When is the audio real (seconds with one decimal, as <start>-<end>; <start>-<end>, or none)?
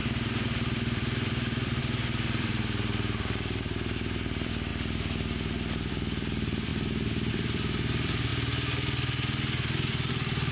6.7-7.3; 8.3-10.1